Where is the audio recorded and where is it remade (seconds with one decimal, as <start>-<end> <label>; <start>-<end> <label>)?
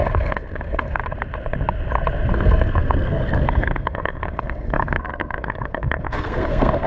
0.0-1.0 remade; 1.0-2.3 recorded; 2.3-6.9 remade